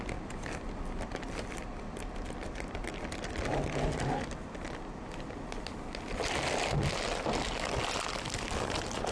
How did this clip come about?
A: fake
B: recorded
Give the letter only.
B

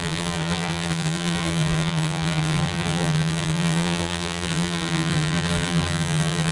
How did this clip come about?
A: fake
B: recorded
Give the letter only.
A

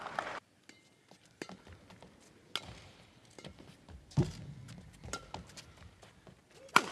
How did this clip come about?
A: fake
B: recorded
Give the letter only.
B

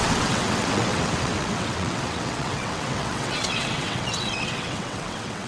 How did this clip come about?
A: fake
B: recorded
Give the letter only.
A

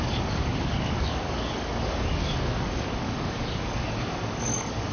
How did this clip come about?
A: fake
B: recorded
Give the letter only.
A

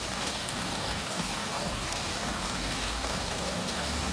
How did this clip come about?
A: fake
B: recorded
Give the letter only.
A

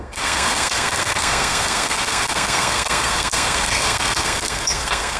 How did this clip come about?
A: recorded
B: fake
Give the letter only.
B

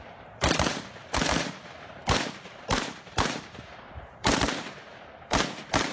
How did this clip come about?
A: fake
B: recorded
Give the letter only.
A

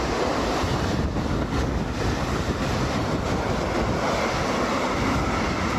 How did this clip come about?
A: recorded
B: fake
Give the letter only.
A